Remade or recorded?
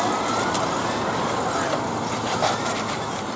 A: recorded